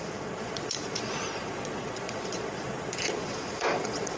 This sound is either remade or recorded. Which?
remade